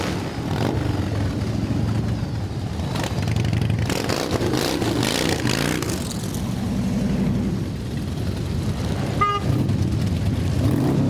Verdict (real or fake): real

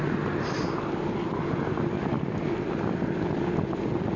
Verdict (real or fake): real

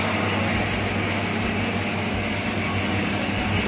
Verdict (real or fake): real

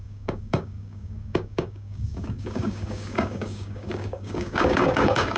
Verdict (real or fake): fake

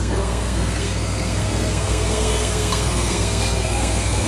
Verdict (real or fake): fake